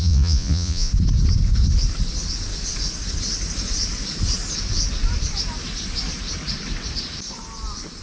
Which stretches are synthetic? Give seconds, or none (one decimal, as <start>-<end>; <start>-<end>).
0.0-0.9